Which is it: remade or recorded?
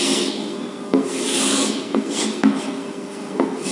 remade